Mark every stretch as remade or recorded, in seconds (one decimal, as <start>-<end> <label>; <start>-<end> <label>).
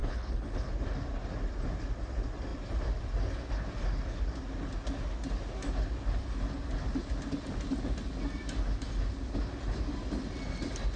0.0-0.7 remade; 0.7-11.0 recorded